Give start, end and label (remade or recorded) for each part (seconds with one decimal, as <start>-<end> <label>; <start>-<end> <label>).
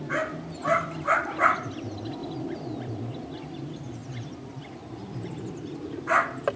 0.0-0.6 recorded; 0.6-1.4 remade; 1.4-2.2 recorded; 2.2-2.9 remade; 2.9-4.0 recorded; 4.0-6.6 remade